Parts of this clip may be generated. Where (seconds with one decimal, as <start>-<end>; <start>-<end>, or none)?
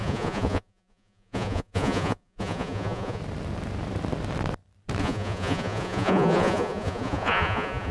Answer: 0.0-3.2; 5.0-7.9